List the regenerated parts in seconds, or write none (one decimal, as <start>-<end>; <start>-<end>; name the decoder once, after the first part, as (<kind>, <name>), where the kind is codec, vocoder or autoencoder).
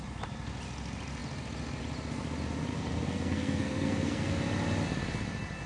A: 2.7-4.4 (codec, SNAC)